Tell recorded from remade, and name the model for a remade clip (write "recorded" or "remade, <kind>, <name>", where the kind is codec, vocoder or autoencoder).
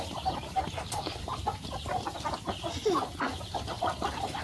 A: recorded